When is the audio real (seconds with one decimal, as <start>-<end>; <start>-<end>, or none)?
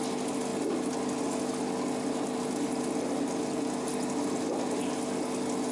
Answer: 0.0-5.7